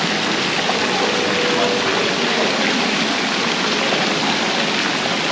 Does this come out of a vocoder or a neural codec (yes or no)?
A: no